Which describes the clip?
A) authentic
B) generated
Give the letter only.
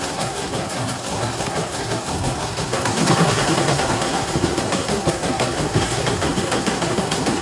B